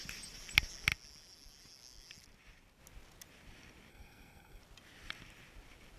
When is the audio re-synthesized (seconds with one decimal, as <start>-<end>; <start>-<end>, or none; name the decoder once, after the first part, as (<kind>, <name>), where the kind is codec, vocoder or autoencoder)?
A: 3.9-4.6 (codec, SNAC)